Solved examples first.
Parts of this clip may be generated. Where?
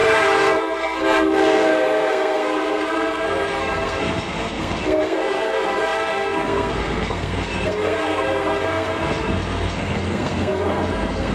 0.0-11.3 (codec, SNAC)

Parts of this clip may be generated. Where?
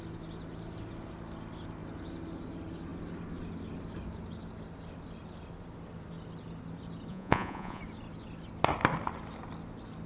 7.1-7.8 (vocoder, Vocos)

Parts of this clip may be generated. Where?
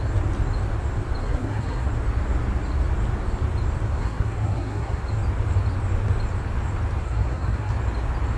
1.2-1.9 (codec, SNAC); 4.0-5.0; 7.0-7.7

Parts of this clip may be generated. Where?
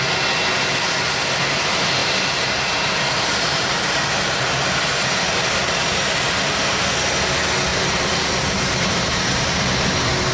2.0-6.9 (vocoder, BigVGAN v2); 7.7-9.6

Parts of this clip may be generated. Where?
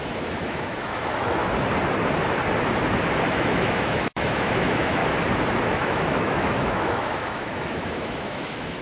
0.0-1.4 (autoencoder, DAC-VAE); 3.3-5.0; 5.6-8.8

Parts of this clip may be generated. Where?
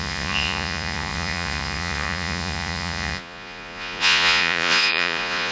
0.0-5.5 (vocoder, Vocos)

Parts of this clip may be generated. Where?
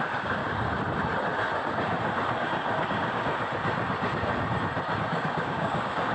0.0-0.4 (codec, DAC); 2.9-3.3; 5.1-6.1